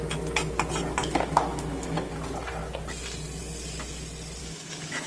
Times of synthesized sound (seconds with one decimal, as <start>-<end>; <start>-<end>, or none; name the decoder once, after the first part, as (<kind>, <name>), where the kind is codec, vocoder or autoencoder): 1.0-2.1 (autoencoder, DAC-VAE); 4.4-5.1